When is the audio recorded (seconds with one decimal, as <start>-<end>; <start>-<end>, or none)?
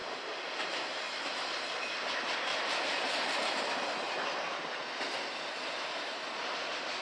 1.5-2.5; 3.4-7.0